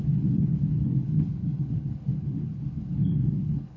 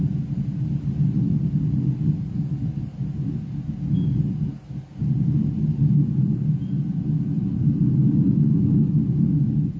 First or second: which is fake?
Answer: first